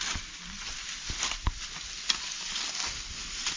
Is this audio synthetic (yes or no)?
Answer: no